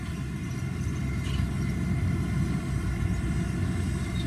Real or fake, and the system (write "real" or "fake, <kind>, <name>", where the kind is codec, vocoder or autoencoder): real